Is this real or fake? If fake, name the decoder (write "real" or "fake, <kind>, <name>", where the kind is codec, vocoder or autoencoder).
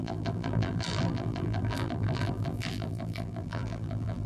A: fake, vocoder, BigVGAN v2